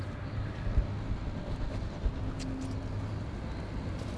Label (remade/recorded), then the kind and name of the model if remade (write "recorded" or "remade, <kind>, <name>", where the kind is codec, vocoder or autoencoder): recorded